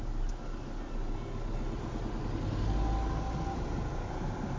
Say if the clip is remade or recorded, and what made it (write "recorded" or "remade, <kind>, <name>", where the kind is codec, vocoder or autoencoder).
recorded